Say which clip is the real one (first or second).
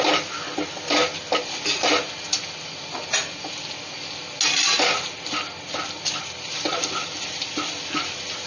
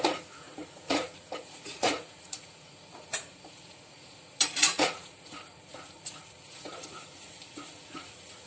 first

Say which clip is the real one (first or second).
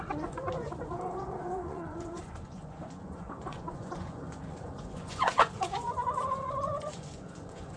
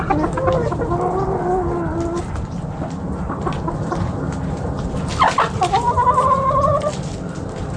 second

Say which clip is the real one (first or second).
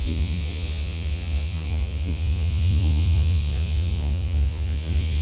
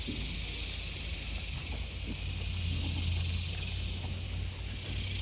second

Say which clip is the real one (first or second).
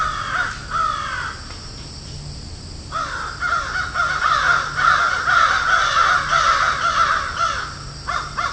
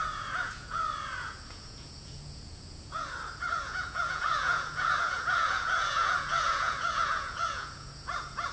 first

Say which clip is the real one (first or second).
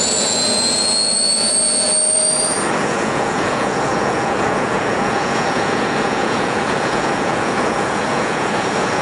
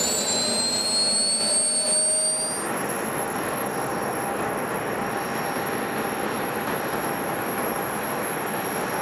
second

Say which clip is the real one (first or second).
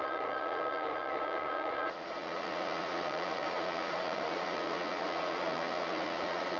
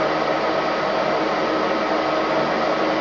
second